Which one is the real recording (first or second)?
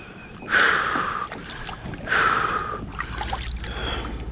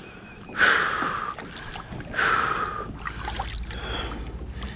second